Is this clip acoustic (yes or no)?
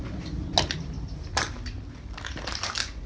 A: yes